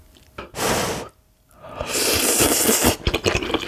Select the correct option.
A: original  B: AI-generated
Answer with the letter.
A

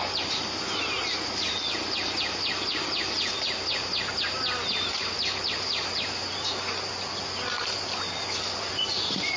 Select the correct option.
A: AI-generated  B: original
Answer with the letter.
B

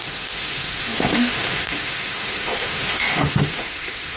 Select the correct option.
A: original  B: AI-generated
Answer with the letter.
B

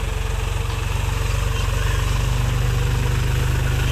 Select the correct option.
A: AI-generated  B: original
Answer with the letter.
B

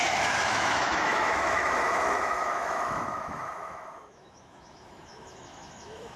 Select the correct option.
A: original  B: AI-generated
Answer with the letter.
B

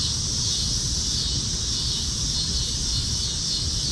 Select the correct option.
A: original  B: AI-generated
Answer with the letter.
A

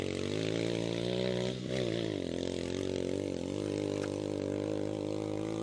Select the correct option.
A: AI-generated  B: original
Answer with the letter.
B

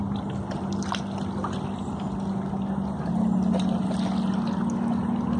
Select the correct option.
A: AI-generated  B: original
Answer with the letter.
B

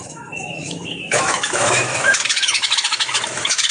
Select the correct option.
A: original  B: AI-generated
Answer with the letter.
B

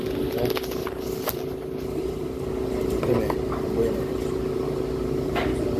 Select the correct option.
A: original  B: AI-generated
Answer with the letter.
A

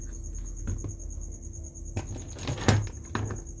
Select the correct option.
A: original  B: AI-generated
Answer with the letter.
A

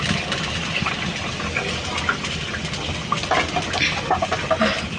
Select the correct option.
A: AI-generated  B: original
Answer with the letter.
B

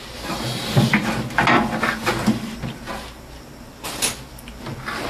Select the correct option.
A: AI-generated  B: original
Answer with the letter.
B